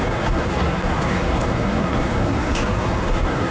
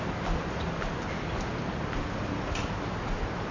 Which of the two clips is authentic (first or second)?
second